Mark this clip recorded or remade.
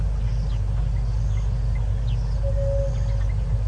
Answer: recorded